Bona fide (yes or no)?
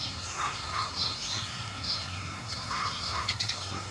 no